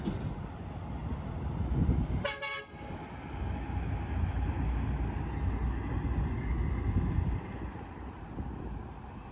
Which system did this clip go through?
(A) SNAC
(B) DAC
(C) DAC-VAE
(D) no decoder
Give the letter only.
D